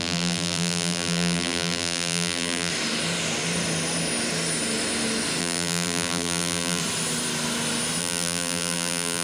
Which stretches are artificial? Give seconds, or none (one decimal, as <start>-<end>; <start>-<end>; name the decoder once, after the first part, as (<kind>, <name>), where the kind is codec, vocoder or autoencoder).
0.0-2.7 (vocoder, BigVGAN v2); 5.4-6.8; 8.0-9.2